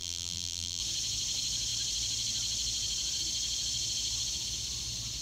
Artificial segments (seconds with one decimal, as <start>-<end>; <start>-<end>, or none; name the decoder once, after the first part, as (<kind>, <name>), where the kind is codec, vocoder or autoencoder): 0.0-0.8 (vocoder, BigVGAN v2)